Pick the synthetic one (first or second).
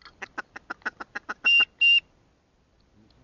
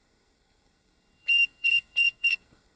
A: second